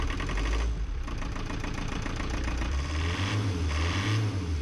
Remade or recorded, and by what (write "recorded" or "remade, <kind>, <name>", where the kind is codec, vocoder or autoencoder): recorded